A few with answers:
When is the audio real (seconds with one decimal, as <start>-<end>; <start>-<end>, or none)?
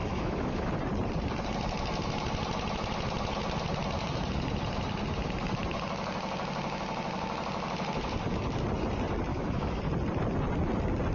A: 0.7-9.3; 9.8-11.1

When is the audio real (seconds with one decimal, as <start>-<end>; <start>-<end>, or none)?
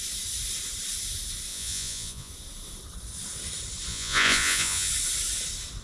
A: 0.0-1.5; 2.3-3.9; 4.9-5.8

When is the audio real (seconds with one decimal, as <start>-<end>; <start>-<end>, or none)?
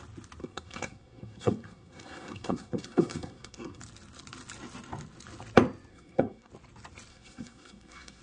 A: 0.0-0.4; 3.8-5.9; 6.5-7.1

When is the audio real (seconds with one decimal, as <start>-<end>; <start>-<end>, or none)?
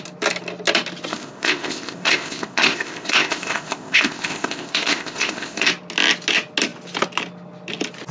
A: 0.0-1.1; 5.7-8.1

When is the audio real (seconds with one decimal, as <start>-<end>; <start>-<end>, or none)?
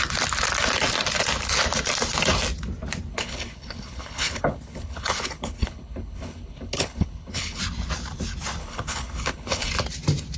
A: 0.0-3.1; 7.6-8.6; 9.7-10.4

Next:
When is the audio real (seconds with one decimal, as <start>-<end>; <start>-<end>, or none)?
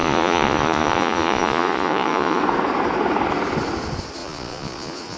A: 2.4-4.2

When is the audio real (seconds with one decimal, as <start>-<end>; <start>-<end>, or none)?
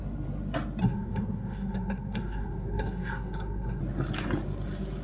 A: 0.0-0.8; 3.8-5.0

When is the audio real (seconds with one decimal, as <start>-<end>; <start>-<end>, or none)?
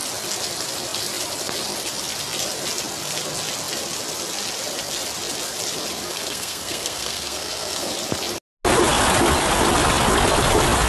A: 0.0-6.1; 7.9-10.9